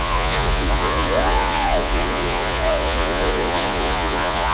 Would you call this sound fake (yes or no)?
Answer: yes